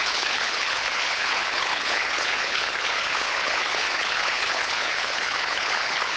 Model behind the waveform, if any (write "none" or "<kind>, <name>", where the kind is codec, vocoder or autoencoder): codec, HILCodec